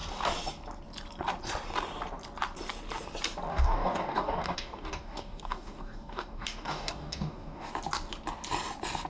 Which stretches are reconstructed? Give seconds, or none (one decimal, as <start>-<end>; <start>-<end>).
3.5-7.7